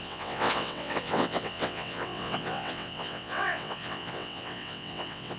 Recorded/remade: remade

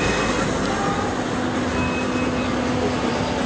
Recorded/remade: recorded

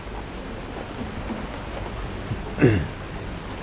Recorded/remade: recorded